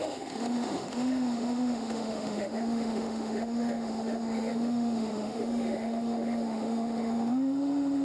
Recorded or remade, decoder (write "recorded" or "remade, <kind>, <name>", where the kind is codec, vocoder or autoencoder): remade, autoencoder, DAC-VAE